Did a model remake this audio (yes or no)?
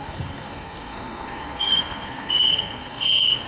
yes